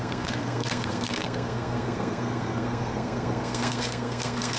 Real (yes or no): no